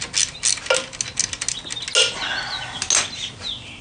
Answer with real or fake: real